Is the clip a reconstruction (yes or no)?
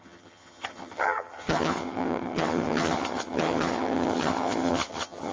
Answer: yes